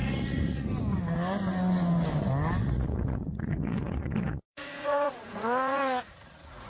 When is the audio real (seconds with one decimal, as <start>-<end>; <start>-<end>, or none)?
0.7-2.6